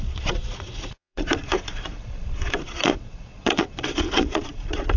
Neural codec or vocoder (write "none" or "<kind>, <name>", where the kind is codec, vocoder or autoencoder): vocoder, Vocos